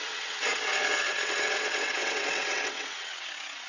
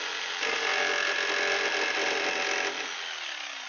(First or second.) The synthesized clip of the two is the first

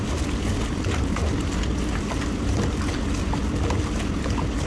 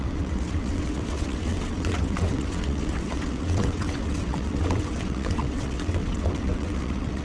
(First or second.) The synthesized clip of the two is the second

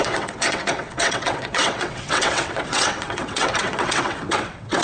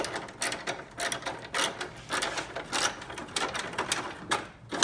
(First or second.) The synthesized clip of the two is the first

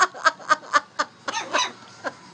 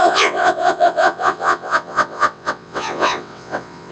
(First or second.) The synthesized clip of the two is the second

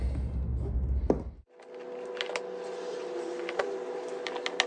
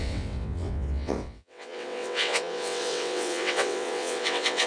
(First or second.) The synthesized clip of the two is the second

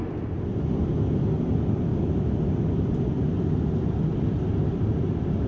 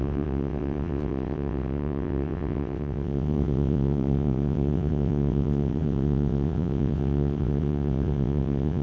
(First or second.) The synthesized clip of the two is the second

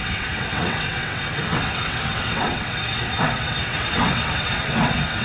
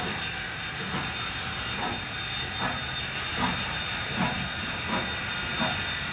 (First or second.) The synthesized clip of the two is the first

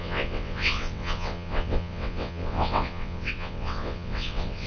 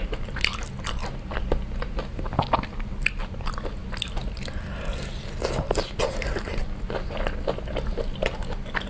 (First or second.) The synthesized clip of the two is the first